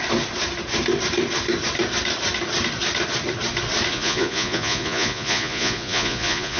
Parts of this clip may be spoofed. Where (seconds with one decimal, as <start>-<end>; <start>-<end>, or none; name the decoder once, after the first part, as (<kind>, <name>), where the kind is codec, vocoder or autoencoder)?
3.9-6.6 (vocoder, Vocos)